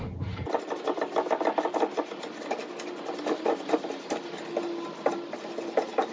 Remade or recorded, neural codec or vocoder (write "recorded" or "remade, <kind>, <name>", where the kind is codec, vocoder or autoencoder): recorded